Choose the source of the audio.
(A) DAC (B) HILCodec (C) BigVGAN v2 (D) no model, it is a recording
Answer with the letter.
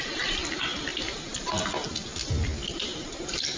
D